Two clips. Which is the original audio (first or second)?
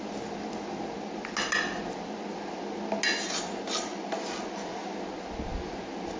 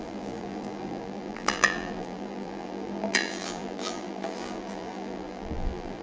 first